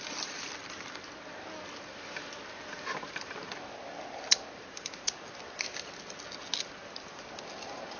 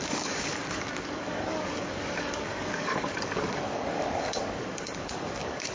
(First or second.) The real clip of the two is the first